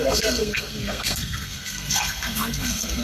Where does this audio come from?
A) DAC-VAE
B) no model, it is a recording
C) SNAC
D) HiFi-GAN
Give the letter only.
C